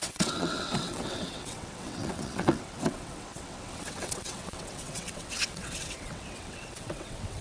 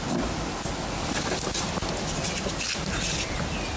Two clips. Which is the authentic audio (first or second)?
second